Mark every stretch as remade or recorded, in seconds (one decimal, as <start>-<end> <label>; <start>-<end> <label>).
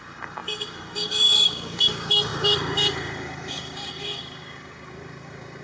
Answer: 0.0-5.6 remade